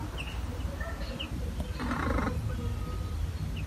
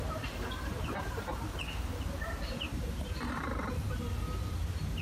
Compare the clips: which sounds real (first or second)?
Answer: first